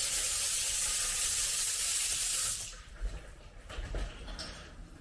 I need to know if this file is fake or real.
fake